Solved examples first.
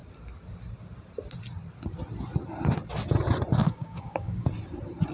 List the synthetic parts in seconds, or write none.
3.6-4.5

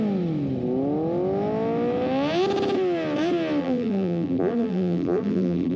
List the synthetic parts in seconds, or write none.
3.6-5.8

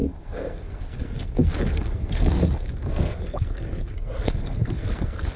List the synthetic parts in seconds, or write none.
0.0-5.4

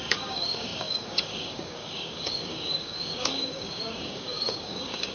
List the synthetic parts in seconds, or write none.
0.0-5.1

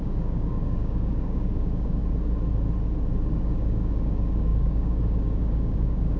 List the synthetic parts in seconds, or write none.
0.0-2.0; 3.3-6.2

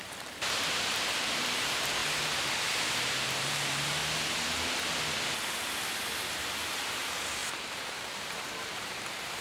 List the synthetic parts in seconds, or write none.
0.0-2.0; 2.8-4.0; 6.5-9.4